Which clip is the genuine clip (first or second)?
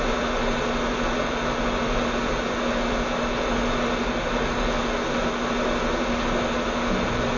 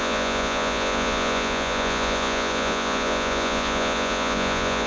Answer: first